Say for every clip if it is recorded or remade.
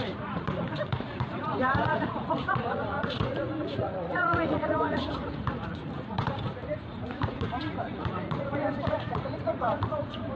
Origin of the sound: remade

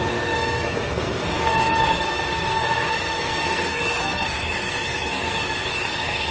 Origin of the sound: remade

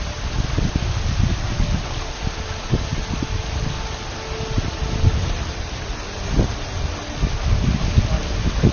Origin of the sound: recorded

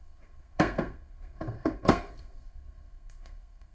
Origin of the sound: remade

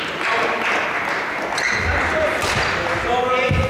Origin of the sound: recorded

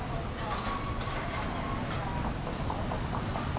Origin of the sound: recorded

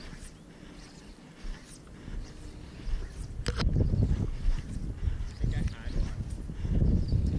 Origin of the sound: recorded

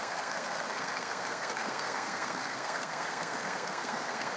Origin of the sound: remade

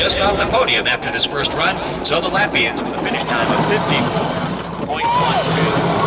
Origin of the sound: recorded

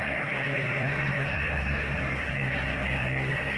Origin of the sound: remade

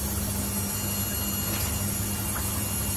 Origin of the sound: recorded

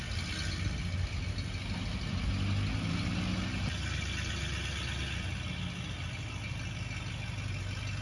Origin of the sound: recorded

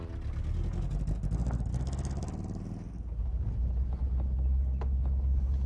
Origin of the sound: recorded